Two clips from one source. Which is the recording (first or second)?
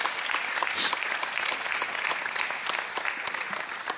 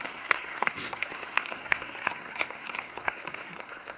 first